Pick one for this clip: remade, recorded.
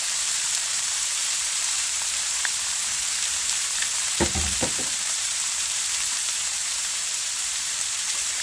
remade